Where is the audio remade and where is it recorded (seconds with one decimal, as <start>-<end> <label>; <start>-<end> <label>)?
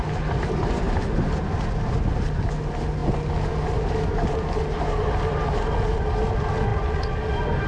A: 0.0-7.7 recorded